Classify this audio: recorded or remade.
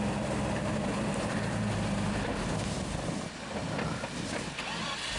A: recorded